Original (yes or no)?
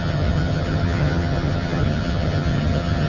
no